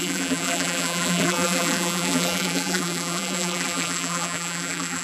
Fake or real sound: fake